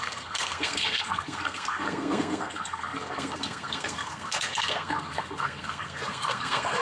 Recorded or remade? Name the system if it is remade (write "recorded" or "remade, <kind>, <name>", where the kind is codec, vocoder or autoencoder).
remade, codec, SNAC